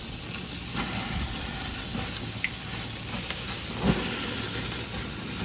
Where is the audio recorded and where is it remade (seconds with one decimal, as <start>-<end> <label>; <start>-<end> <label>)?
0.0-5.4 recorded